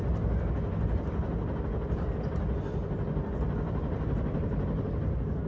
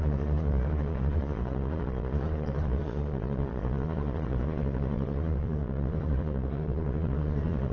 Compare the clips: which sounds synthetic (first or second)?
second